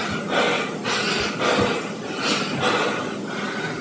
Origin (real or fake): real